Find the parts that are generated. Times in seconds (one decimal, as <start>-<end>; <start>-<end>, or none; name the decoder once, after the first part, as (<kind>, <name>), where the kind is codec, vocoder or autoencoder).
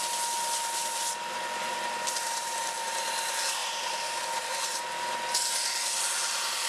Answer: 0.8-2.6 (vocoder, BigVGAN v2); 3.6-6.0